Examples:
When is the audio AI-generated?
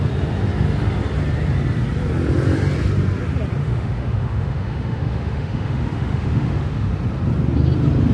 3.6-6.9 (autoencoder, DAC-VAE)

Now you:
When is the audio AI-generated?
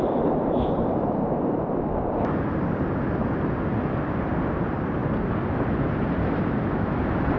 none